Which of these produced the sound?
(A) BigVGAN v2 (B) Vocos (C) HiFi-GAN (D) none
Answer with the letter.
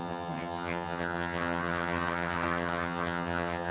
C